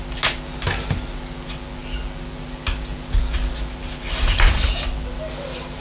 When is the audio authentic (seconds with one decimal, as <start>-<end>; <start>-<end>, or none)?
0.0-5.8